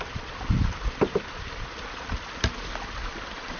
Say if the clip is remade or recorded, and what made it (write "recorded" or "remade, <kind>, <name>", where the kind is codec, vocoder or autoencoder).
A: recorded